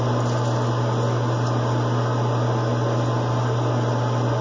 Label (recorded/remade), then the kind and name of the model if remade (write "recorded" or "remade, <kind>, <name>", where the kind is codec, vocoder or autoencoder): recorded